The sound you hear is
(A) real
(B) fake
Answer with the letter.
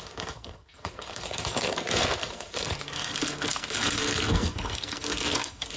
B